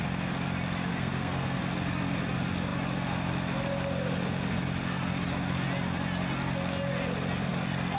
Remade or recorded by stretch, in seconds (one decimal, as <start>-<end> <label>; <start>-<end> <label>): 0.0-0.9 recorded; 0.9-1.6 remade; 1.6-8.0 recorded